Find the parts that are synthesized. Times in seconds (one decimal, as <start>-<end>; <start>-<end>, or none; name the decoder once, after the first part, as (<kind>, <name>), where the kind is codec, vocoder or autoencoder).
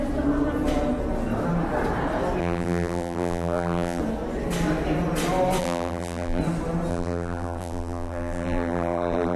2.4-4.0 (vocoder, BigVGAN v2); 5.6-6.4; 6.9-9.4